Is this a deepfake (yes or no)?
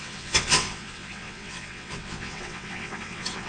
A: yes